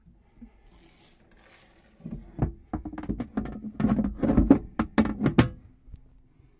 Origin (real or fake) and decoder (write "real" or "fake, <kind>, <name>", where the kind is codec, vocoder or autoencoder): real